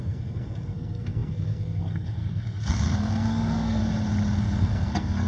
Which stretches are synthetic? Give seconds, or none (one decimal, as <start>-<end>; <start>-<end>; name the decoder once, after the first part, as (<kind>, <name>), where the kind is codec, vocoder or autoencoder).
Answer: 0.0-3.8 (codec, SNAC); 4.4-5.3